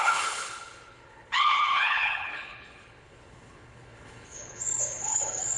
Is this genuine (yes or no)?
no